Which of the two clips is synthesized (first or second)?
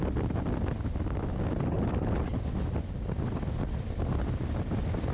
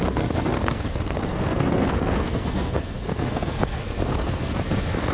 second